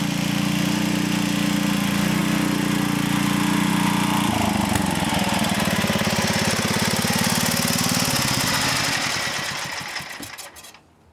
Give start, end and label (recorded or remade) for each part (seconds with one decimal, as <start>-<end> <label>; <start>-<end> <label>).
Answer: 0.0-11.1 recorded